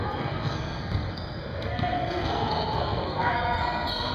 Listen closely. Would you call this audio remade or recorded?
remade